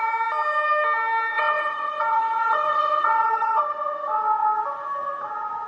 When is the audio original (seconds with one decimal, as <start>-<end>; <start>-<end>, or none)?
0.0-1.3; 3.6-5.7